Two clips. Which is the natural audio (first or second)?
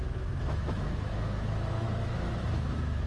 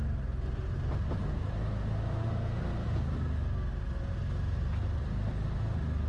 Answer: second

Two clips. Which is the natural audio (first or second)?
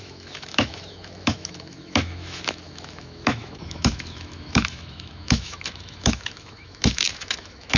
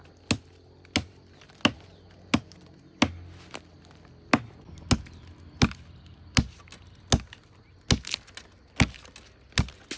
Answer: second